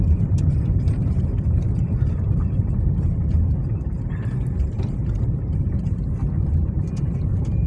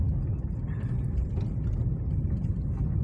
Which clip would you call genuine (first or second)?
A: second